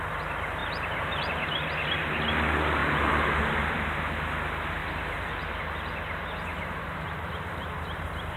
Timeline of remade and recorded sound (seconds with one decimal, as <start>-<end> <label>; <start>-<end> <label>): 0.0-0.6 recorded; 0.6-1.3 remade; 1.3-2.8 recorded; 2.8-3.4 remade; 3.4-4.8 recorded; 4.8-5.5 remade; 5.5-6.5 recorded; 6.5-7.3 remade; 7.3-8.4 recorded